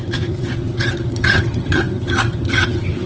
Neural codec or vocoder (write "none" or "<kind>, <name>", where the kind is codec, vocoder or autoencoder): vocoder, HiFi-GAN